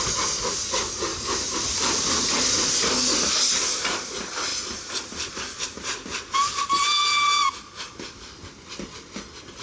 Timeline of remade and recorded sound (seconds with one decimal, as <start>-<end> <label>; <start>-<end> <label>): 0.0-1.1 recorded; 1.1-2.0 remade; 2.0-4.5 recorded; 4.5-5.3 remade; 5.3-9.6 recorded

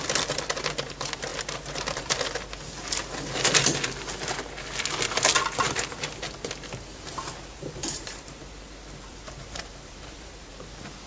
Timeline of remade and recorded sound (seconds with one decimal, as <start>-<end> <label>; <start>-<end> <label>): 0.0-7.8 recorded; 7.8-8.4 remade; 8.4-9.1 recorded; 9.1-10.5 remade; 10.5-11.1 recorded

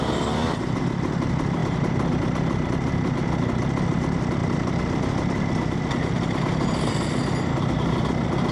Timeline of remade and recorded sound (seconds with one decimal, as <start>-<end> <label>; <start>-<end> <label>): 0.0-1.6 recorded; 1.6-2.1 remade; 2.1-8.5 recorded

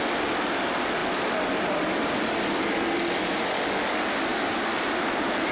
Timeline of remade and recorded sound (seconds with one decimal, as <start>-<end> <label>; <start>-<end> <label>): 0.0-4.3 recorded; 4.3-5.5 remade